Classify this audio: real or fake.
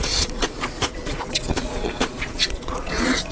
fake